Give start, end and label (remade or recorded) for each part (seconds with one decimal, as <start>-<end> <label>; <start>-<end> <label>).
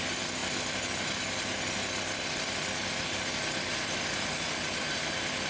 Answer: 0.0-5.5 recorded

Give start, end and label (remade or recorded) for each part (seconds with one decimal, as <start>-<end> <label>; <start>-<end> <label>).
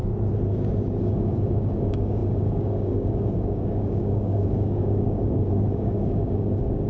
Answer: 0.0-1.0 recorded; 1.0-6.9 remade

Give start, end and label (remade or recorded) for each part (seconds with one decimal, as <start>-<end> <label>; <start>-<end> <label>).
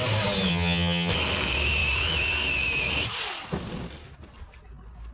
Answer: 0.0-0.5 recorded; 0.5-1.1 remade; 1.1-5.1 recorded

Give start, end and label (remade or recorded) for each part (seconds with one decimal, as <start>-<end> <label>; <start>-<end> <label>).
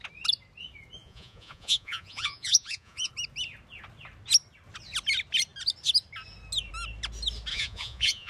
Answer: 0.0-1.0 recorded; 1.0-3.1 remade; 3.1-7.5 recorded; 7.5-8.3 remade